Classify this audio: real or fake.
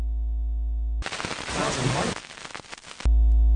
real